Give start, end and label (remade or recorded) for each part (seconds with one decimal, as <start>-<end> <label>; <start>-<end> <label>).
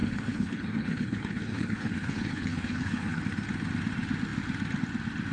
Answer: 0.0-3.2 remade; 3.2-5.3 recorded